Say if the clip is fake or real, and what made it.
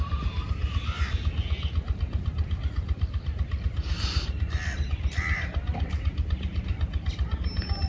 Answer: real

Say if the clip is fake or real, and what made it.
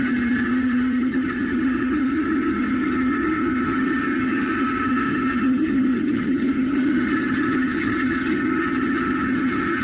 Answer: fake, vocoder, HiFi-GAN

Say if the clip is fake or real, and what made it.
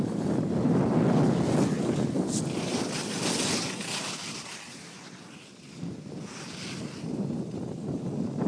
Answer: real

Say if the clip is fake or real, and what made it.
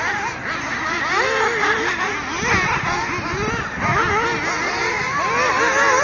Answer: real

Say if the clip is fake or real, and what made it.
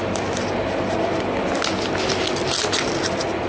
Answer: real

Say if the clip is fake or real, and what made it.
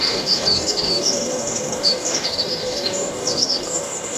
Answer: fake, codec, DAC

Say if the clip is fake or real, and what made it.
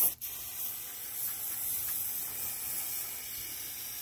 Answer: real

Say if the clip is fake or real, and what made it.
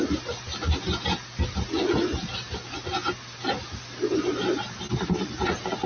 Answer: real